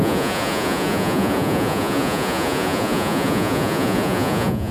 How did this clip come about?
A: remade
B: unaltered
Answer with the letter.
A